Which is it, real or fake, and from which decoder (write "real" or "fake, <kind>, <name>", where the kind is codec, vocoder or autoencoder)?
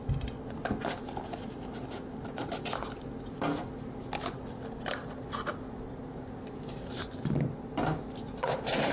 real